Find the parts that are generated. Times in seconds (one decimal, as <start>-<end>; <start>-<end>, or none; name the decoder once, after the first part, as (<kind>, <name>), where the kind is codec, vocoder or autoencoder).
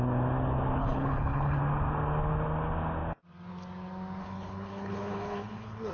0.8-1.6 (codec, HILCodec); 4.2-5.9